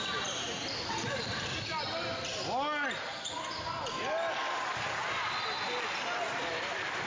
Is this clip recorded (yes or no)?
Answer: yes